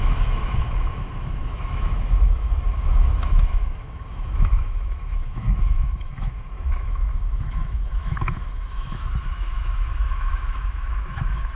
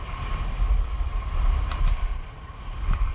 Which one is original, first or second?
second